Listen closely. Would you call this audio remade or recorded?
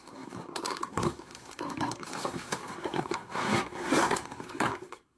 remade